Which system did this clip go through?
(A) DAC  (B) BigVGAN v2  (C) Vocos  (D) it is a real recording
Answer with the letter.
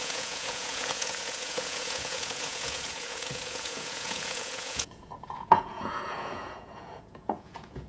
C